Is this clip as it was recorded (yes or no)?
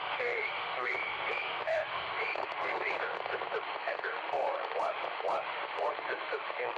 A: no